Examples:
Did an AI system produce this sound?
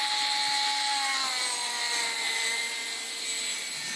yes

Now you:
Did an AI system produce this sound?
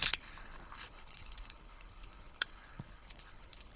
yes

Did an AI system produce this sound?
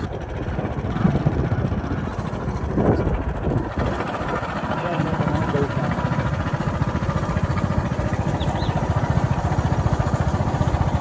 no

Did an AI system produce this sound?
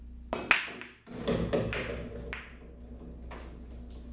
no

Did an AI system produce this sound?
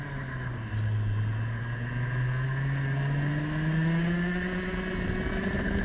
no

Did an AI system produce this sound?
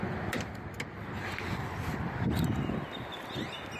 no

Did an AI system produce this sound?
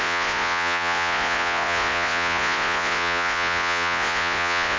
yes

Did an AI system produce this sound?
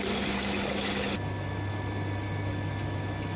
no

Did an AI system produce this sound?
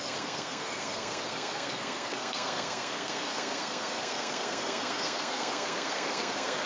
yes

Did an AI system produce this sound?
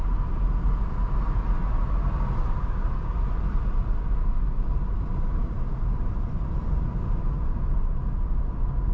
no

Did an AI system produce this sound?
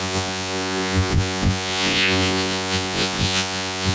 yes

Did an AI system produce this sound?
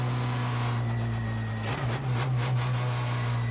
no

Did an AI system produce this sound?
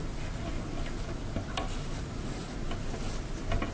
no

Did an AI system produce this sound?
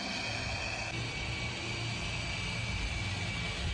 no